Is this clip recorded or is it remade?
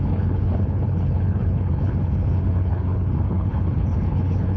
remade